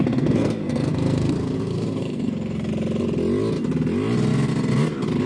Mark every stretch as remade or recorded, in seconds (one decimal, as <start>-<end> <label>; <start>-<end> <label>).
0.0-2.7 remade; 2.7-5.3 recorded